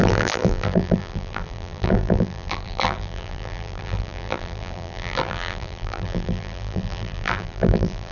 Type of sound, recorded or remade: remade